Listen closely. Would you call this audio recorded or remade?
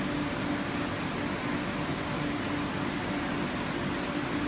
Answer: recorded